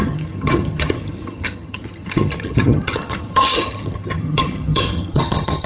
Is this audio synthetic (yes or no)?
yes